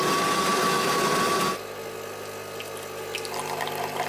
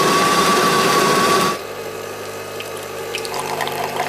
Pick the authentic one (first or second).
first